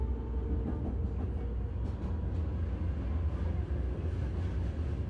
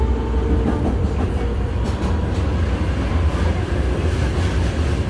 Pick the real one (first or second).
first